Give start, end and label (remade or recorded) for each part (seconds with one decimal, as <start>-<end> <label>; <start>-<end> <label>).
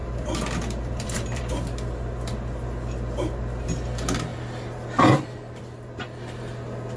0.0-1.4 remade; 1.4-4.3 recorded; 4.3-5.2 remade; 5.2-7.0 recorded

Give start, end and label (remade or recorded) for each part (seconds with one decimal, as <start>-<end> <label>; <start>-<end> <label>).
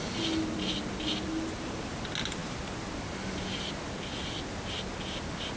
0.0-5.6 recorded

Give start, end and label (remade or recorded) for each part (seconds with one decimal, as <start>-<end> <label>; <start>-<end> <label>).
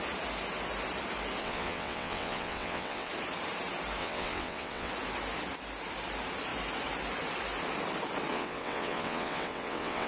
0.0-1.4 recorded; 1.4-3.1 remade; 3.1-4.0 recorded; 4.0-4.9 remade; 4.9-8.3 recorded; 8.3-10.1 remade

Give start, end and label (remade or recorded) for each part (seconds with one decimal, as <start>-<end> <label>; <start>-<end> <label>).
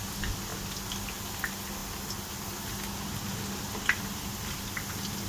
0.0-5.3 recorded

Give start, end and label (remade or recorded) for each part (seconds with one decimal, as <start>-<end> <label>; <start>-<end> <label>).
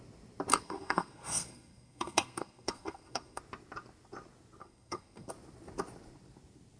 0.0-0.5 recorded; 0.5-3.4 remade; 3.4-4.6 recorded; 4.6-5.3 remade; 5.3-6.8 recorded